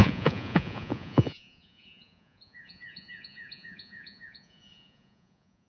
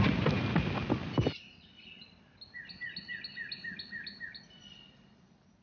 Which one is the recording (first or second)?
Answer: second